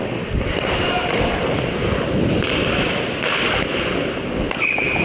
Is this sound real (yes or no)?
yes